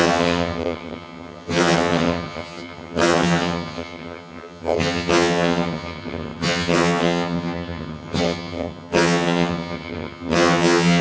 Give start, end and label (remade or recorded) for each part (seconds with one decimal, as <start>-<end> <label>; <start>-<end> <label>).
0.0-11.0 remade